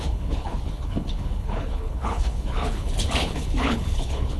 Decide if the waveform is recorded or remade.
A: remade